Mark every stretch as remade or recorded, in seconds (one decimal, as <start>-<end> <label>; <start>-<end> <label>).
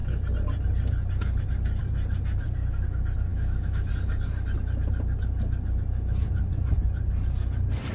0.0-3.3 recorded; 3.3-3.9 remade; 3.9-7.9 recorded